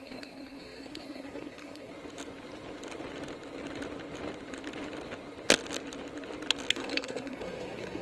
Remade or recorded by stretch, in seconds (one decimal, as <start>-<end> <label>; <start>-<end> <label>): 0.0-1.9 remade; 1.9-6.7 recorded; 6.7-8.0 remade